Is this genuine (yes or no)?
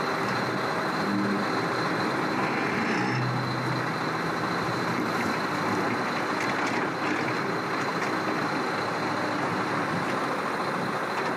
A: yes